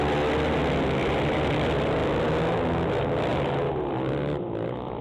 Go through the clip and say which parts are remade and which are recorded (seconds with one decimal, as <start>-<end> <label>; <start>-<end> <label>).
0.0-5.0 recorded